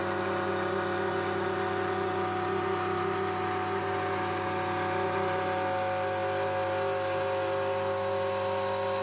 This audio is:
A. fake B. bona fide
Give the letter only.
B